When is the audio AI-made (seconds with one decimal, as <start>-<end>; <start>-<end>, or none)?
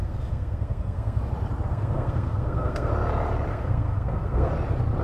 0.0-1.2; 1.7-2.9; 3.5-4.5